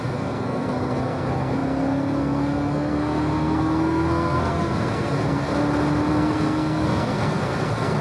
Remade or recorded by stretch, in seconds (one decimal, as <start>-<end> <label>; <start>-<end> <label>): 0.0-5.5 remade; 5.5-6.1 recorded; 6.1-8.0 remade